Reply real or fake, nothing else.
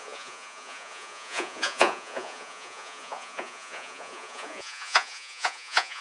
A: fake